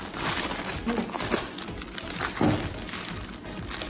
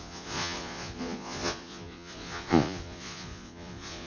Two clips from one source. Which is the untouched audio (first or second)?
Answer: first